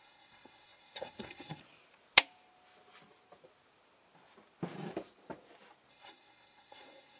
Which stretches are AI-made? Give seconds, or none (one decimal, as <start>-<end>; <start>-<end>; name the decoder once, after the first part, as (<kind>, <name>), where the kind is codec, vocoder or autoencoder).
0.0-1.6 (codec, SNAC); 5.9-7.2